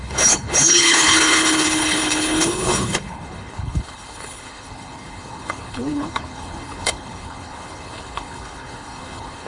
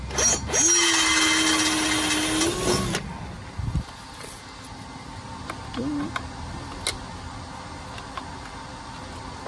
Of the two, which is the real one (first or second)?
second